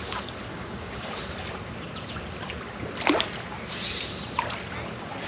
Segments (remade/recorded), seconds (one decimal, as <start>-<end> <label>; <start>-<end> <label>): 0.0-0.5 recorded; 0.5-1.1 remade; 1.1-5.3 recorded